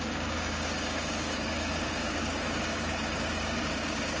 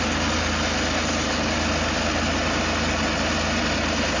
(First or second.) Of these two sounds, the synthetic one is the first